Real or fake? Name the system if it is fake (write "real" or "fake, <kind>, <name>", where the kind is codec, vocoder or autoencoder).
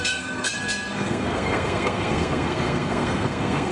fake, codec, SNAC